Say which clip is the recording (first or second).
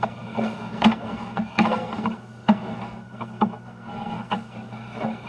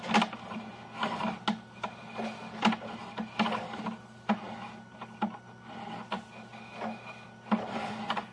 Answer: second